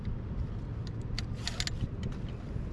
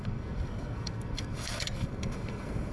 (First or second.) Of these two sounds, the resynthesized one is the second